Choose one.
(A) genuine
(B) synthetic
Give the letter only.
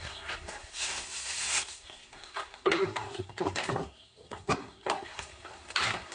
B